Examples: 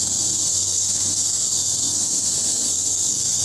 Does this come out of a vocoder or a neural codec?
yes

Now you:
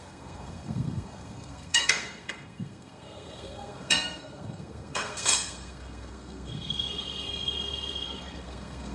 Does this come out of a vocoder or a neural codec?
yes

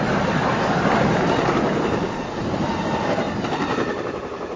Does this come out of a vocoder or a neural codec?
no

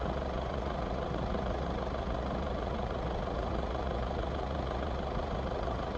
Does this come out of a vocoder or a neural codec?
yes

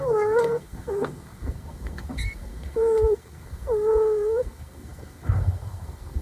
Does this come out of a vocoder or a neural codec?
yes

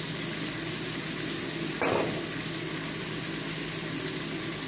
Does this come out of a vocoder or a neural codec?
no